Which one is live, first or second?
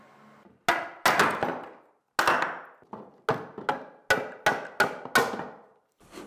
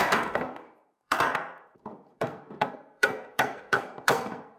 first